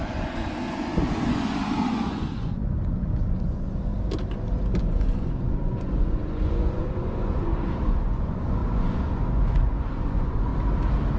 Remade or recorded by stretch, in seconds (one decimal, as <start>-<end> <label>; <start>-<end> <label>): 0.0-3.9 remade; 3.9-4.8 recorded; 4.8-10.5 remade; 10.5-11.2 recorded